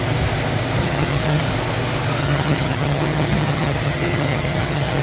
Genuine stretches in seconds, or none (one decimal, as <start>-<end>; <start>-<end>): 0.0-0.8; 1.4-2.2

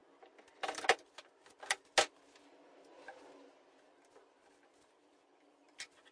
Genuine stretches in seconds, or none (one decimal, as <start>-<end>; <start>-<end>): 0.0-6.1

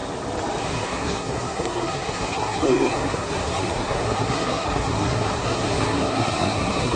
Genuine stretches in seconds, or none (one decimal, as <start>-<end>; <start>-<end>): 0.0-0.6

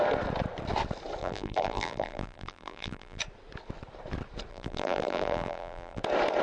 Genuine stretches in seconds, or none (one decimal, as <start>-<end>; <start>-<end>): 0.0-1.2; 3.2-4.5; 6.0-6.4

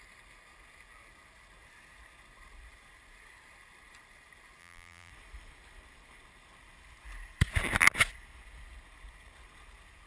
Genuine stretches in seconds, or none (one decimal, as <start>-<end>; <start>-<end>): 0.0-4.6; 5.1-10.1

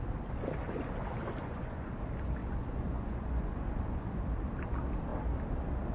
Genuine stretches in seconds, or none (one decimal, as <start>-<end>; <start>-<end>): 0.0-1.4; 1.9-2.4; 4.2-5.9

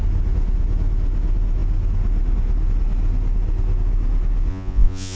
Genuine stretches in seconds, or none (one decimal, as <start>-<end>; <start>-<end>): 0.0-4.5

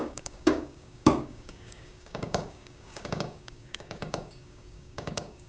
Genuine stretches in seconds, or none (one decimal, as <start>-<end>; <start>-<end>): none